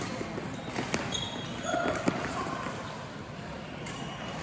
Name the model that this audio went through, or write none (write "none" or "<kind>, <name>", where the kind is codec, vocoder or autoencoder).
none